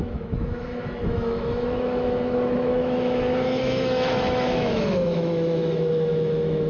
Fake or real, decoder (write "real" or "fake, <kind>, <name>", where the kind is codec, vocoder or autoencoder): fake, autoencoder, DAC-VAE